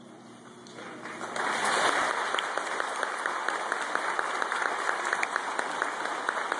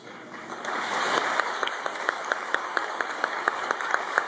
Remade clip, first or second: second